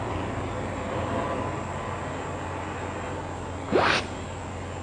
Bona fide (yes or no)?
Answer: yes